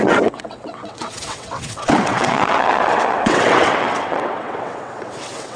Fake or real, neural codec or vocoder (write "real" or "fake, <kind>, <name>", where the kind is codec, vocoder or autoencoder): fake, vocoder, WaveNeXt